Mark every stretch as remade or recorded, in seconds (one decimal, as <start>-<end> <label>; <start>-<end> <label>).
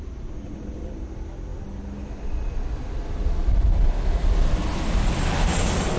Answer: 0.0-6.0 recorded